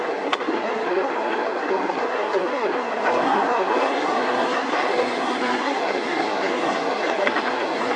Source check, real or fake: fake